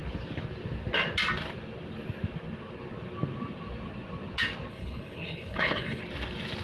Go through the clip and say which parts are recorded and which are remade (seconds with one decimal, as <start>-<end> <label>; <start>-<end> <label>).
0.0-4.7 recorded; 4.7-6.0 remade; 6.0-6.6 recorded